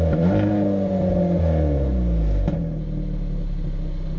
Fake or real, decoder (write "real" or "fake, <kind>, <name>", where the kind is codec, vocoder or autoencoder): real